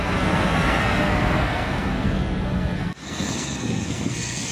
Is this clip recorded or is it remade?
remade